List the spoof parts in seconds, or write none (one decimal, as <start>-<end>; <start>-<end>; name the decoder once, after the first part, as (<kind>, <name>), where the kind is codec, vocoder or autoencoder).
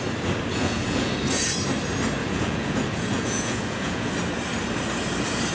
0.5-1.1 (vocoder, Vocos); 2.2-4.1